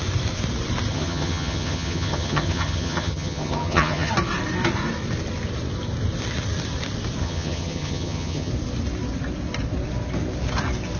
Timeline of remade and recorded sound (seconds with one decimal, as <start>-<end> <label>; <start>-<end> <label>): 0.0-0.9 recorded; 0.9-4.1 remade; 4.1-7.2 recorded; 7.2-8.5 remade; 8.5-11.0 recorded